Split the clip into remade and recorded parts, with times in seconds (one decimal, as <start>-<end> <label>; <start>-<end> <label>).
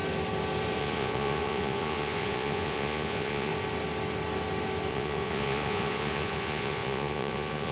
0.0-0.8 recorded; 0.8-3.5 remade; 3.5-4.9 recorded; 4.9-7.7 remade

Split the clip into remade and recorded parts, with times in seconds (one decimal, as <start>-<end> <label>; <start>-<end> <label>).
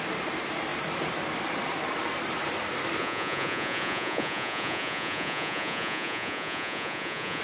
0.0-3.0 recorded; 3.0-7.4 remade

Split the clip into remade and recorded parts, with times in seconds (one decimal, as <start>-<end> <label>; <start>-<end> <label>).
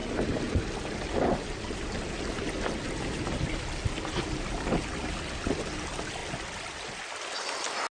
0.0-7.9 recorded